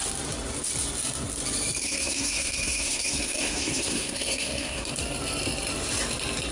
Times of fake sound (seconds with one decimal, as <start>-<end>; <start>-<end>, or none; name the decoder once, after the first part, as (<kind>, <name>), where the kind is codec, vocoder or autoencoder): 1.8-4.9 (codec, SNAC)